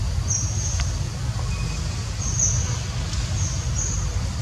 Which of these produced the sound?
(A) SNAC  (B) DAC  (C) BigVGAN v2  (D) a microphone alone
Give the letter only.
D